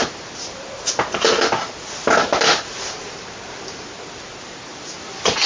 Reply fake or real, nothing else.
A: real